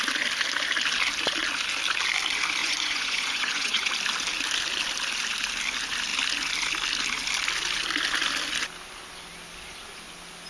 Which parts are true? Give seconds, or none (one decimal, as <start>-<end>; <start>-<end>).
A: 0.0-2.6; 3.9-10.5